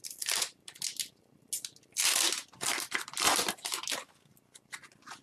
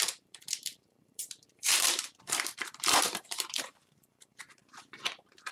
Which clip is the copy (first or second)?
second